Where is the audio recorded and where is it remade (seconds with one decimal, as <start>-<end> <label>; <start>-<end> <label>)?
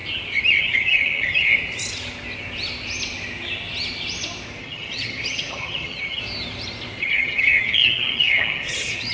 0.0-0.6 recorded; 0.6-1.5 remade; 1.5-4.6 recorded; 4.6-6.2 remade; 6.2-7.0 recorded; 7.0-9.1 remade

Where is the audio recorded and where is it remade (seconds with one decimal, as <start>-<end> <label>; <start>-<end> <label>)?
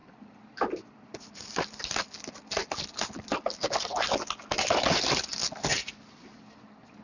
0.0-1.6 remade; 1.6-5.7 recorded; 5.7-7.0 remade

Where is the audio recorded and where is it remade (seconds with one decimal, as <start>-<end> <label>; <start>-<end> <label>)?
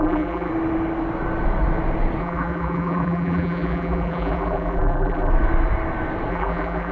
0.0-0.5 remade; 0.5-2.2 recorded; 2.2-5.3 remade; 5.3-6.3 recorded; 6.3-6.9 remade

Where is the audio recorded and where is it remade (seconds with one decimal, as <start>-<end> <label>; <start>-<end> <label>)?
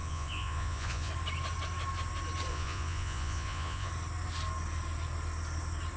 0.0-1.1 remade; 1.1-2.5 recorded; 2.5-3.9 remade; 3.9-6.0 recorded